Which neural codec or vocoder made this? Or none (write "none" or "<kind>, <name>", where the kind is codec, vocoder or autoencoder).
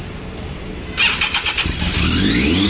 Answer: none